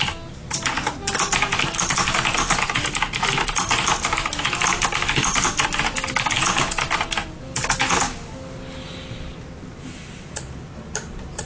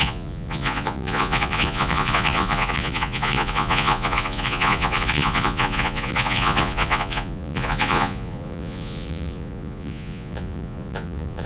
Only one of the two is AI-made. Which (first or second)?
second